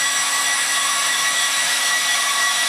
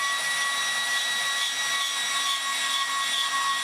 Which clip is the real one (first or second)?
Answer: second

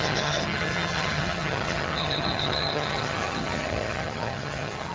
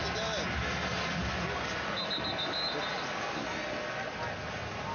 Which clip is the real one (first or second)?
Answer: second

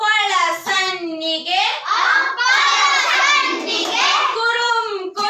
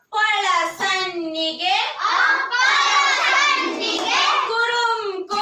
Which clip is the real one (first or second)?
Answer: second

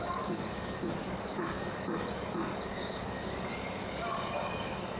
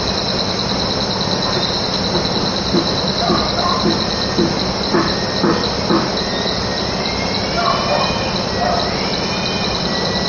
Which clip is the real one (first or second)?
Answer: second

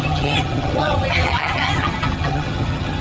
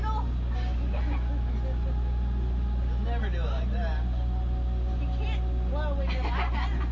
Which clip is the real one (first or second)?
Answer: second